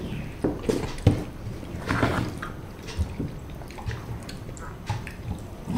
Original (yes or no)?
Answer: no